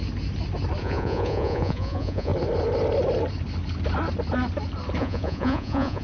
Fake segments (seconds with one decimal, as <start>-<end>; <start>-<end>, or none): 0.8-2.3; 5.0-6.0